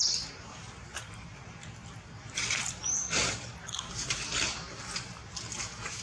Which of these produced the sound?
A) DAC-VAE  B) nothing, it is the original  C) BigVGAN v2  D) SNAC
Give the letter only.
C